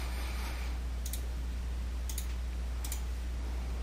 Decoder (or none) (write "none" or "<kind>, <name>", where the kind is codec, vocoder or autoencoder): none